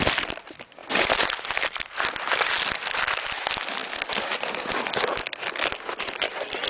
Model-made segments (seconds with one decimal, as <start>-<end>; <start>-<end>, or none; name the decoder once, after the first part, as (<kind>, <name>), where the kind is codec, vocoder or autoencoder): none